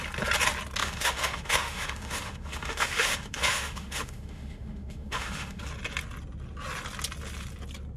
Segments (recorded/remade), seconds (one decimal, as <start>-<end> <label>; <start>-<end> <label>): 0.0-0.8 recorded; 0.8-5.6 remade; 5.6-8.0 recorded